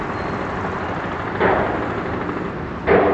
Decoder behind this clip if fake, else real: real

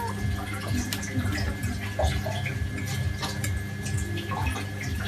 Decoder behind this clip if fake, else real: real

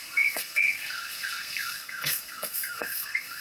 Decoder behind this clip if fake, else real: fake, codec, SNAC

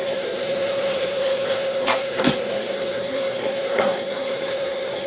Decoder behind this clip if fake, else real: fake, codec, SNAC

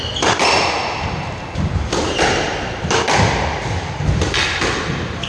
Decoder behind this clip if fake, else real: real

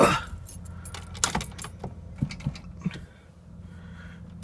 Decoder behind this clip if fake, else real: real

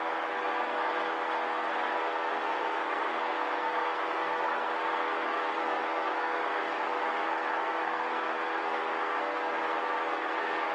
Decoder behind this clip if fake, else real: fake, codec, SNAC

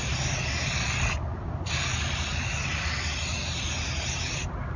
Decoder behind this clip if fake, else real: real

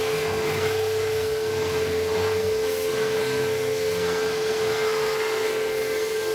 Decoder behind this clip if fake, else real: fake, codec, SNAC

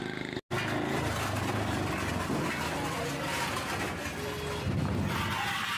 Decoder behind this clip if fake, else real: real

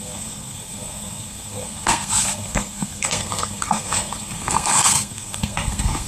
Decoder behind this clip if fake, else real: fake, codec, SNAC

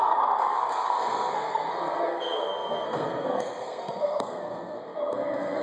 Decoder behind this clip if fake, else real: fake, codec, SNAC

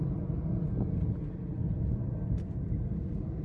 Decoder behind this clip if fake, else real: real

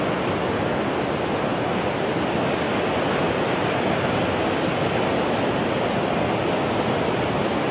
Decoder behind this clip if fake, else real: real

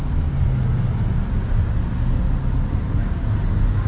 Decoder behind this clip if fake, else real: real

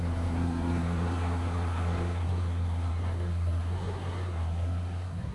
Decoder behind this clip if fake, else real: fake, codec, SNAC